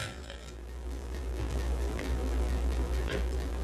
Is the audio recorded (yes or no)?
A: no